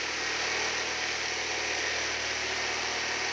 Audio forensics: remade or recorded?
recorded